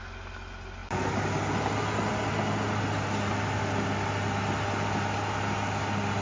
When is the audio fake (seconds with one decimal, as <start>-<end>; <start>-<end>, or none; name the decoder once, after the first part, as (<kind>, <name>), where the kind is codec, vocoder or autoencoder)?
none